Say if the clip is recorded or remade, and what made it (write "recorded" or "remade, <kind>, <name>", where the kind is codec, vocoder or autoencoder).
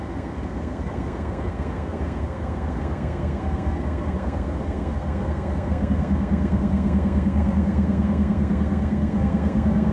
remade, codec, SNAC